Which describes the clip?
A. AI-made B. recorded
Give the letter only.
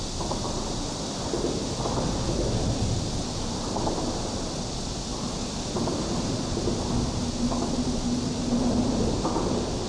B